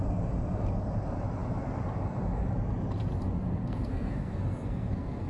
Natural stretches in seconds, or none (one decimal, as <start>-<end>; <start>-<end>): 0.0-3.6